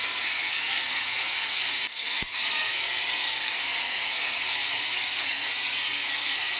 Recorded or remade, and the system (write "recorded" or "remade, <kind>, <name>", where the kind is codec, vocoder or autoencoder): remade, codec, SNAC